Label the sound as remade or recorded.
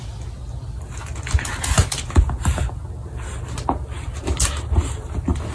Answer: recorded